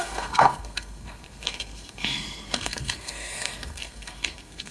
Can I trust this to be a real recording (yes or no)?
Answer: no